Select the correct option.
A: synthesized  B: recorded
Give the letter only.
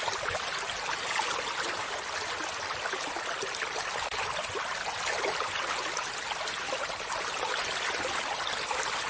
B